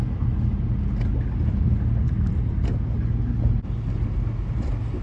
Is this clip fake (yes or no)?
no